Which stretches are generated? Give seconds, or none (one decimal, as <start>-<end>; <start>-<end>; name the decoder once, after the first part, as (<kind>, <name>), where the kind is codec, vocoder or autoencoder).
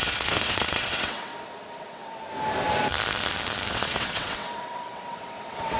0.0-1.3 (vocoder, WaveNeXt); 1.8-2.2; 3.7-5.8